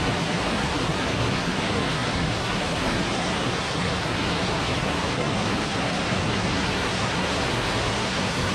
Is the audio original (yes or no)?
no